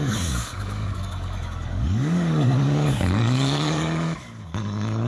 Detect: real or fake fake